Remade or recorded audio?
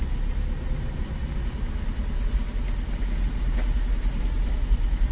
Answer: recorded